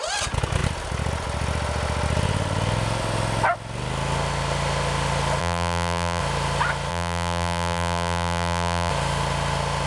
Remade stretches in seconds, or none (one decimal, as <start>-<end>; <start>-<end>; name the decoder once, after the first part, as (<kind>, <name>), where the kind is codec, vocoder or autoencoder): 5.4-6.2 (vocoder, BigVGAN v2); 6.9-8.9

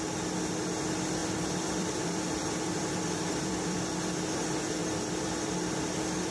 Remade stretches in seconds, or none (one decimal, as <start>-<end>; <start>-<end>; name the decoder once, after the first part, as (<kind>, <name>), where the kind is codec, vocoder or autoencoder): 1.2-3.8 (vocoder, BigVGAN v2); 4.8-6.3

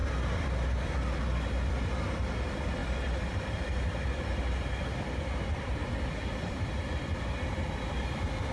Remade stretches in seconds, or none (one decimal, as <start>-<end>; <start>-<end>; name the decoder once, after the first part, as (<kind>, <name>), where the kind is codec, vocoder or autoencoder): 0.0-0.9 (vocoder, BigVGAN v2); 2.8-6.6

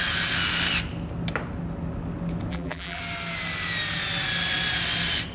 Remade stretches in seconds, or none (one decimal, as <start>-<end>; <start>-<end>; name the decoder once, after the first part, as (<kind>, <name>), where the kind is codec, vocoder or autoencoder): 2.5-3.0 (vocoder, BigVGAN v2)

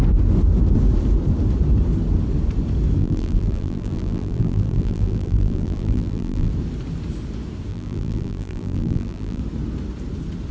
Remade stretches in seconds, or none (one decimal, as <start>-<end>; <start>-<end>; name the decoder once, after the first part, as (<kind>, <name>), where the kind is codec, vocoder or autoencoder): 3.0-6.5 (vocoder, BigVGAN v2); 7.7-9.4